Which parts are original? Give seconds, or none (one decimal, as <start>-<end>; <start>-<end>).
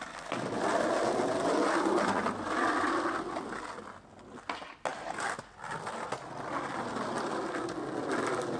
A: 0.0-8.6